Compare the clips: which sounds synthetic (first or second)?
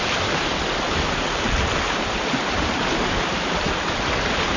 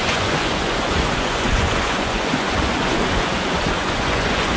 second